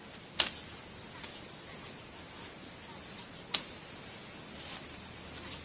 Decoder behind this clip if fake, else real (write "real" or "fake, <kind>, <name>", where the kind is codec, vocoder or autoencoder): real